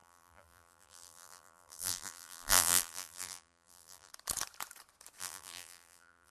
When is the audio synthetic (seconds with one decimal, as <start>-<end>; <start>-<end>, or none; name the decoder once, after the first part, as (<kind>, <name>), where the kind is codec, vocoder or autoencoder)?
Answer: 0.0-4.1 (vocoder, BigVGAN v2); 5.2-6.3